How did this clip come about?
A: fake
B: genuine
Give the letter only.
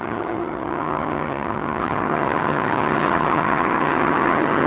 A